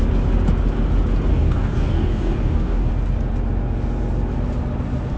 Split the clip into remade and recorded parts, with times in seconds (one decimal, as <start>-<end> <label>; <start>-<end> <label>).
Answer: 0.0-1.3 recorded; 1.3-2.9 remade; 2.9-5.2 recorded